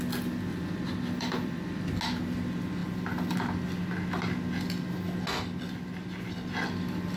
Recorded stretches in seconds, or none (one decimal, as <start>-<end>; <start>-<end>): 0.0-0.5; 1.9-7.2